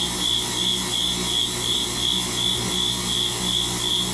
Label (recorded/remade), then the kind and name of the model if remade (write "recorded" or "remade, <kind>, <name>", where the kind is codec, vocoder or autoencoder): recorded